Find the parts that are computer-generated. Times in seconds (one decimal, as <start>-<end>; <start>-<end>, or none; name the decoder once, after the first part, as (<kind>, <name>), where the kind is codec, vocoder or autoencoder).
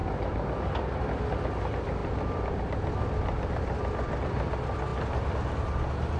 none